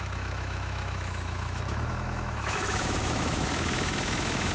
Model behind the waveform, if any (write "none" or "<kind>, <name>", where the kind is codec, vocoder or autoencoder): autoencoder, DAC-VAE